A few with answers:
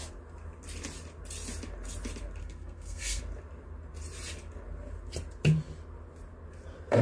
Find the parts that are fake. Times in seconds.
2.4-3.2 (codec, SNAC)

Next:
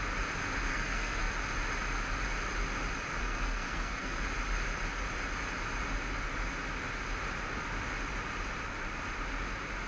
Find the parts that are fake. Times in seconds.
0.7-1.3 (codec, SNAC); 3.2-4.2

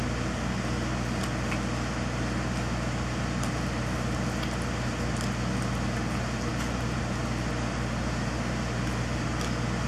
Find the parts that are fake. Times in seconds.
none

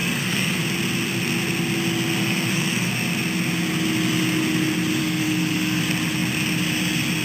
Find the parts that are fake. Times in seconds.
0.0-0.6 (codec, SNAC); 2.2-2.9; 5.0-5.8

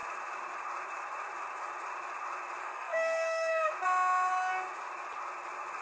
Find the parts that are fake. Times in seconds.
2.6-3.7 (codec, SNAC)

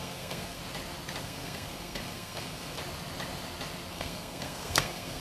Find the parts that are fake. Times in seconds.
0.0-0.6 (codec, SNAC); 1.2-2.8; 3.9-5.2

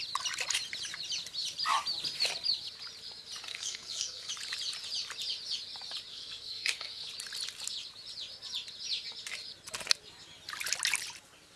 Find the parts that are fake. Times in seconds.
3.5-4.3 (codec, SNAC); 6.1-7.1